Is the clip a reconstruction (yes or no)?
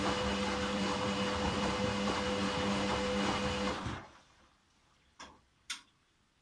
yes